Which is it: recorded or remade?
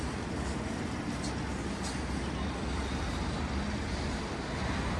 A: recorded